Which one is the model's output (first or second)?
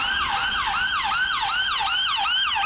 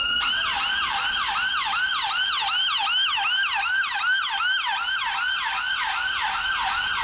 first